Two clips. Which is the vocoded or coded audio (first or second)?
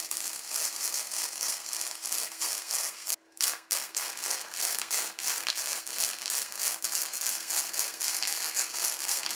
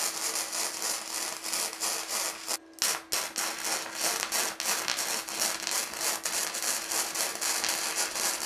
first